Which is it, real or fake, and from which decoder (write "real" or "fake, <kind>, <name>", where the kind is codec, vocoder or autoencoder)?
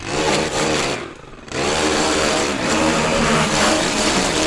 fake, vocoder, BigVGAN v2